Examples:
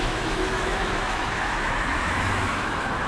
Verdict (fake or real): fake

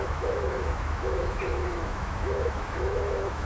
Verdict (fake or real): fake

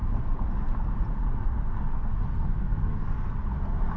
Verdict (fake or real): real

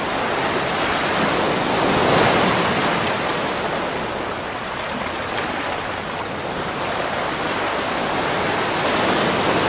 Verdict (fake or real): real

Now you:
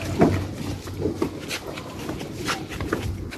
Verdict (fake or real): real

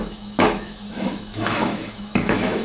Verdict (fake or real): fake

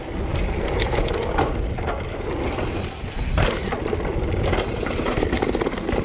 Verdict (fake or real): real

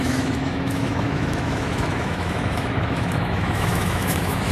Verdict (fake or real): fake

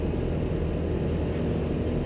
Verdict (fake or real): real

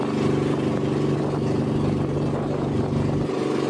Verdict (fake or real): real